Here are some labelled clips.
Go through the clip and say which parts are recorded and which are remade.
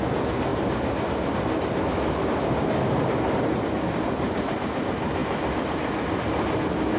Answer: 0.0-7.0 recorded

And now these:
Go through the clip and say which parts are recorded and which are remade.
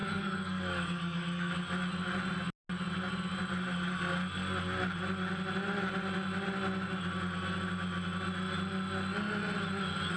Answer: 0.0-1.5 remade; 1.5-10.2 recorded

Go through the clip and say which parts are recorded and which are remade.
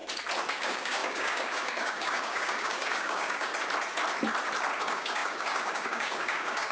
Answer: 0.0-0.5 recorded; 0.5-3.5 remade; 3.5-4.8 recorded; 4.8-6.7 remade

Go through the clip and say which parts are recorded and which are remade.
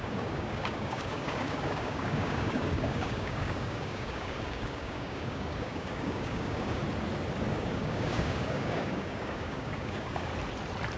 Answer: 0.0-6.8 remade; 6.8-7.5 recorded; 7.5-10.3 remade; 10.3-11.0 recorded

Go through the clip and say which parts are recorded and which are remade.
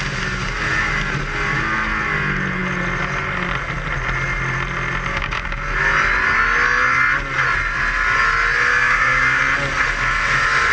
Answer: 0.0-5.1 recorded; 5.1-5.6 remade; 5.6-8.7 recorded; 8.7-9.4 remade; 9.4-10.7 recorded